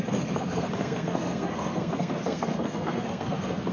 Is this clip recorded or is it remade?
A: remade